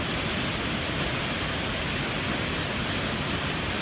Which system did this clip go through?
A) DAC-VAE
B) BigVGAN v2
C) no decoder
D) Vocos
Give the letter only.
C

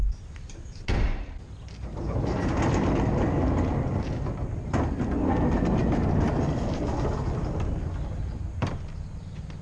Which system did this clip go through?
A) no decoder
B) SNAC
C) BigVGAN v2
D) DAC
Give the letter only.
A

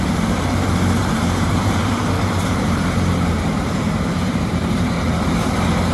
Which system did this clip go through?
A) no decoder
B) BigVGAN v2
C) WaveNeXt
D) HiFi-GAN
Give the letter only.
B